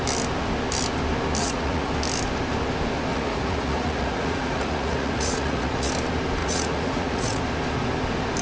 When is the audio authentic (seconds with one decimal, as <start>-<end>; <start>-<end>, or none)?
0.0-1.4; 1.9-3.1; 5.9-6.4; 7.4-8.4